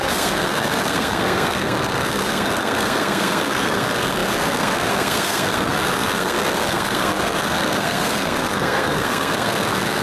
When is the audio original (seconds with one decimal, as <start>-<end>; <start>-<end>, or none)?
none